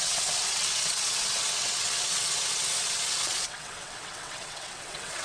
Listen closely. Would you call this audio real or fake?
fake